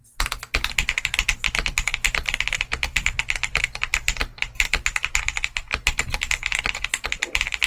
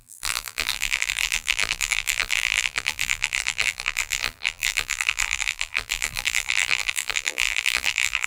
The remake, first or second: second